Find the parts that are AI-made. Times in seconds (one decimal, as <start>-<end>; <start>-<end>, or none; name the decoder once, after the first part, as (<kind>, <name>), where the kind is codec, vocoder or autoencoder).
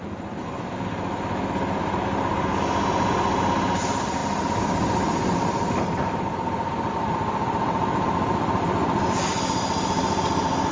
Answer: 4.2-6.9 (vocoder, BigVGAN v2)